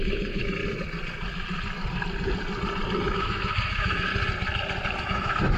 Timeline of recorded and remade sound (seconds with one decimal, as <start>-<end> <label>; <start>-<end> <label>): 0.0-0.6 remade; 0.6-3.0 recorded; 3.0-4.1 remade; 4.1-5.0 recorded; 5.0-5.6 remade